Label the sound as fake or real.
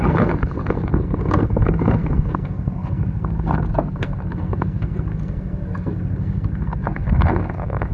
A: fake